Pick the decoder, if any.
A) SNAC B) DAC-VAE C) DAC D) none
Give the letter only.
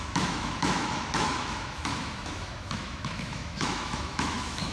B